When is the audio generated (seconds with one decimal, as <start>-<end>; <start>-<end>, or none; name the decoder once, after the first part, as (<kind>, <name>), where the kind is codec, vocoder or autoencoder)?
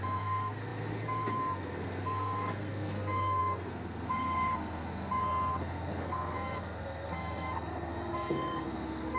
0.0-9.2 (codec, SNAC)